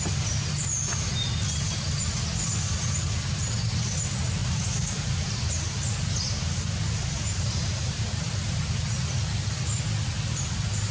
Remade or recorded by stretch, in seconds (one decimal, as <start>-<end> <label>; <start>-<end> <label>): 0.0-4.4 recorded; 4.4-5.4 remade; 5.4-7.0 recorded; 7.0-8.6 remade; 8.6-10.9 recorded